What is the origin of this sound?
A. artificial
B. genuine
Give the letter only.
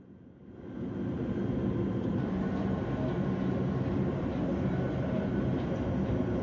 B